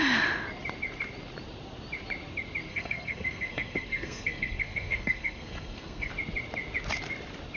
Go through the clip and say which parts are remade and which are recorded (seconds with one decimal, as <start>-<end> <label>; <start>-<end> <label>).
0.0-2.7 recorded; 2.7-6.1 remade; 6.1-7.6 recorded